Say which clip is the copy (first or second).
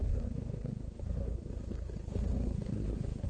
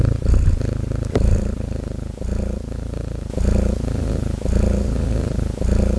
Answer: first